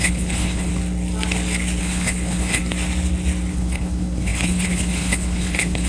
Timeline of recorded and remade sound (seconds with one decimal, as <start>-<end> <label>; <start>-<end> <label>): 0.0-0.7 remade; 0.7-1.8 recorded; 1.8-2.6 remade; 2.6-3.5 recorded; 3.5-5.9 remade